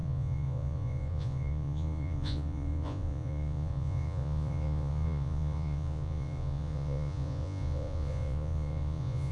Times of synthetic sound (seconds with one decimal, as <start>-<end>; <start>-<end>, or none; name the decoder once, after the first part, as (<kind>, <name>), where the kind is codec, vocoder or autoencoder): 0.0-9.3 (vocoder, Vocos)